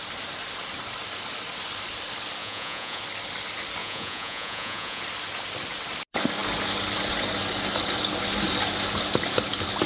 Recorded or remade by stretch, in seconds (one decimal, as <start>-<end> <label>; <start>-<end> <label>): 0.0-2.4 recorded; 2.4-3.0 remade; 3.0-3.8 recorded; 3.8-5.0 remade; 5.0-9.9 recorded